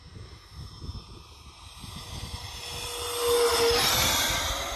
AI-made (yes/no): no